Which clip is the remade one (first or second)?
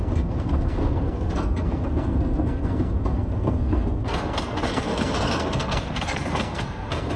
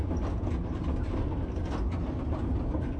first